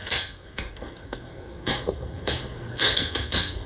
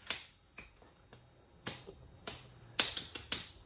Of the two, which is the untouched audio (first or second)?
second